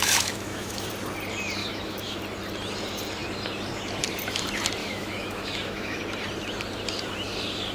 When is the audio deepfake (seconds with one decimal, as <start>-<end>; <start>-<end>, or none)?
0.0-0.9; 1.6-2.2; 4.8-6.0